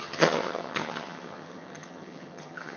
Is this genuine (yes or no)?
no